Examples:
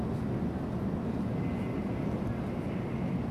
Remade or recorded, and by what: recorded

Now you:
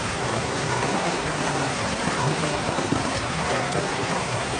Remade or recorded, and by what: remade, codec, SNAC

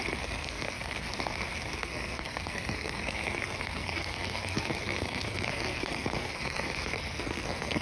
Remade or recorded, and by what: remade, codec, SNAC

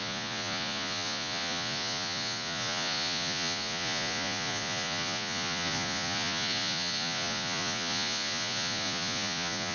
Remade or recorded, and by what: remade, vocoder, Vocos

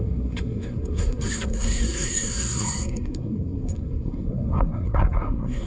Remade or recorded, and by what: remade, codec, SNAC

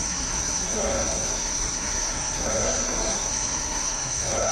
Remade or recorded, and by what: remade, codec, SNAC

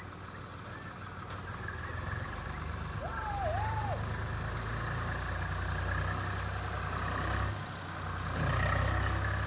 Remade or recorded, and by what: recorded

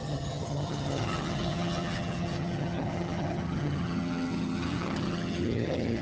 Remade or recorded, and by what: remade, vocoder, HiFi-GAN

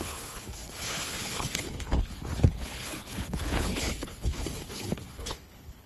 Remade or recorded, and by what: remade, codec, HILCodec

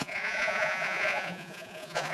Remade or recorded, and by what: remade, vocoder, Vocos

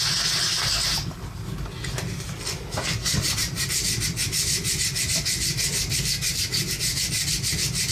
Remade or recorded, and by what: recorded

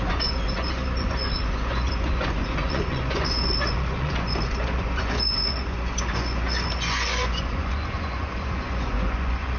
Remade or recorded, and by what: remade, vocoder, Vocos